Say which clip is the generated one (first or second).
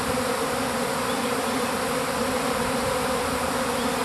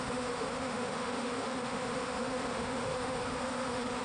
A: second